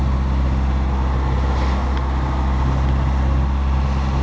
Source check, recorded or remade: recorded